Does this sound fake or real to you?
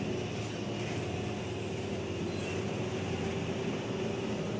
real